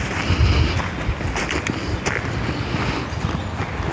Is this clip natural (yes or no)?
yes